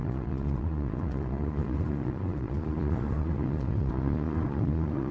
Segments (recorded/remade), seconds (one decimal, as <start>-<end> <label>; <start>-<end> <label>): 0.0-5.1 remade